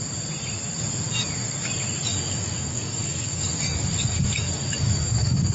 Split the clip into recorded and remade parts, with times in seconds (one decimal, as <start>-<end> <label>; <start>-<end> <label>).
0.0-2.1 recorded; 2.1-5.5 remade